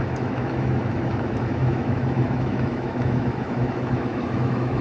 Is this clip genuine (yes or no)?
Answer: no